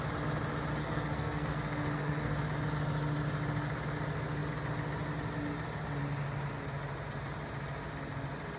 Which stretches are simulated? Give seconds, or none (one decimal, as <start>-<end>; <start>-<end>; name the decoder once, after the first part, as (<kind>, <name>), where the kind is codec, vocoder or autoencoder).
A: 0.8-2.4 (codec, SNAC)